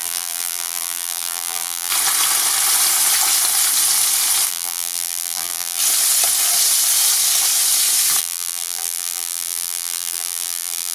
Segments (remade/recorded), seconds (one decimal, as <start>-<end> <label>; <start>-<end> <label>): 0.0-1.9 remade; 1.9-4.5 recorded; 4.5-5.8 remade; 5.8-8.2 recorded; 8.2-10.9 remade